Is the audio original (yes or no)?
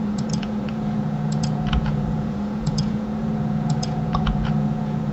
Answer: no